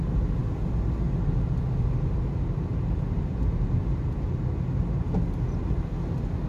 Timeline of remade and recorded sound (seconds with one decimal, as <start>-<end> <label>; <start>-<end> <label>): 0.0-6.5 recorded